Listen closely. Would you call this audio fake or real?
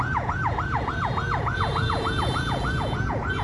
fake